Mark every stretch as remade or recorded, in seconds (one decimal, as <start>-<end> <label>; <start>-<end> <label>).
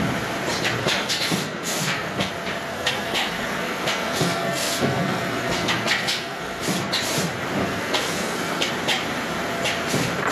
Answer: 0.0-0.8 recorded; 0.8-2.3 remade; 2.3-2.7 recorded; 2.7-6.6 remade; 6.6-7.6 recorded; 7.6-8.7 remade; 8.7-10.3 recorded